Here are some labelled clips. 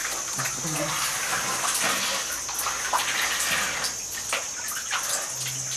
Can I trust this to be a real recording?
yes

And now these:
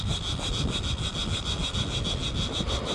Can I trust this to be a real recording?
yes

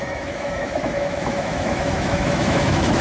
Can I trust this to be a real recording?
no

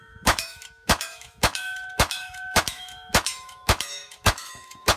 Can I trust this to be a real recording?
no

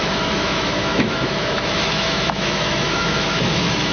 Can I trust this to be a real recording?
no